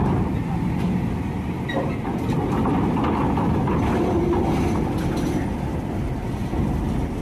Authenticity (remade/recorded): recorded